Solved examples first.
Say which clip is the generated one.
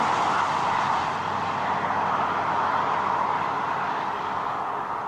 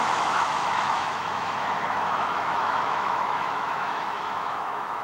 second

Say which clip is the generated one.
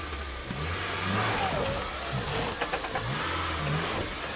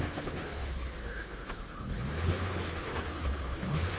second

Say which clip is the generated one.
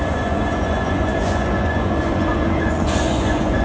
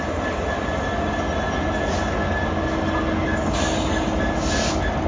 first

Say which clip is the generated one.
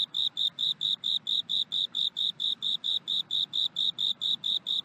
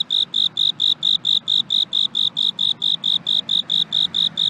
first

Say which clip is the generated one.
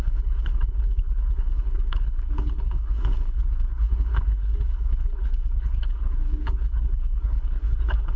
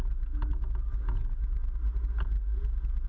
first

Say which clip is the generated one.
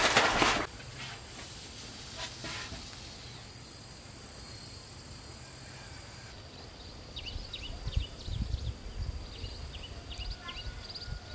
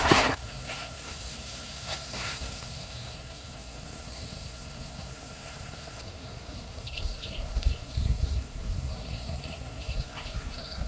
second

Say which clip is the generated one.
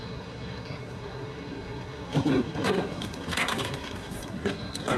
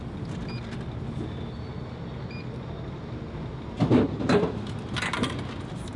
first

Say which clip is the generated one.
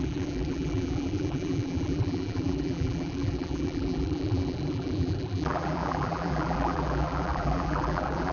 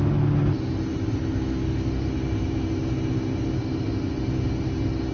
first